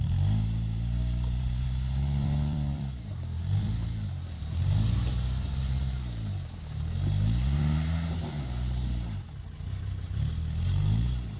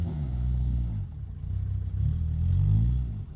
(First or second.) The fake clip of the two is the first